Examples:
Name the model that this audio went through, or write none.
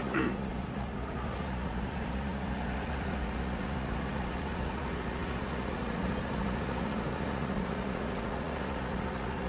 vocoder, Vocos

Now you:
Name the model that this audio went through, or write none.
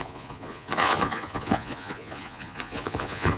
vocoder, Vocos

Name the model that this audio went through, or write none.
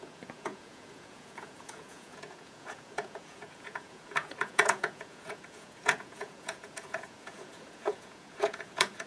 vocoder, Vocos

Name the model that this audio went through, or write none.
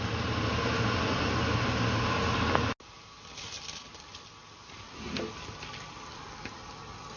none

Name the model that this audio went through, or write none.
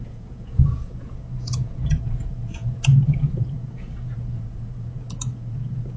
vocoder, Vocos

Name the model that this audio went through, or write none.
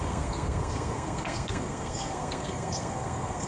codec, SNAC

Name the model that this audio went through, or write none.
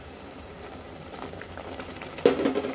none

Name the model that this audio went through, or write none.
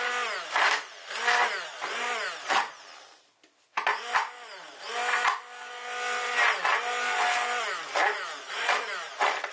none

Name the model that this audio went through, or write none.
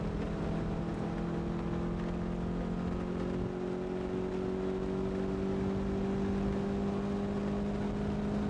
none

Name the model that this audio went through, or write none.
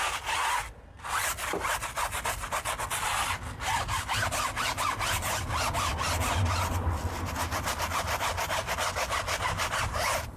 none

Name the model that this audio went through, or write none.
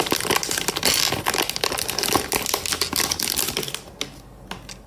none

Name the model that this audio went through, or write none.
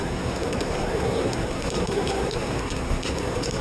codec, SNAC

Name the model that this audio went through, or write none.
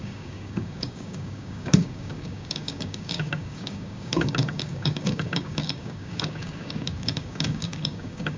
codec, DAC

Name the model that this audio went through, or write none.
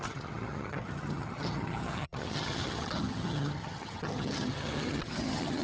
vocoder, HiFi-GAN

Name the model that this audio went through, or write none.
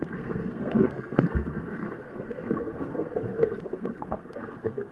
codec, SNAC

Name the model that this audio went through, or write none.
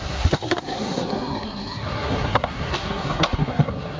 codec, SNAC